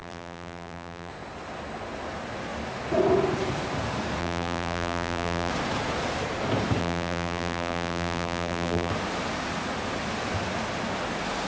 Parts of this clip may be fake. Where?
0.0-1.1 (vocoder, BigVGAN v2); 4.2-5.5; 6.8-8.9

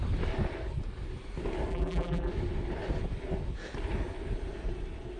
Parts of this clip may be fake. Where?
1.7-2.3 (vocoder, BigVGAN v2)

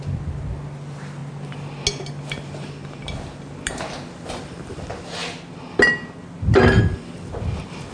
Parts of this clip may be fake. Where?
none

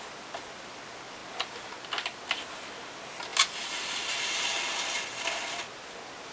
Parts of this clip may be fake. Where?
none

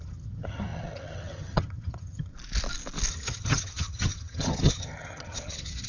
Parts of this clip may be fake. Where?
0.0-2.3 (vocoder, HiFi-GAN); 3.1-5.9

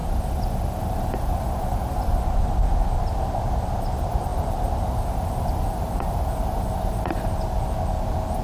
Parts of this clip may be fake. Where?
none

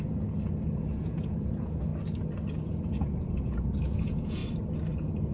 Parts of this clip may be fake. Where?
0.0-1.9 (vocoder, Vocos); 2.6-4.4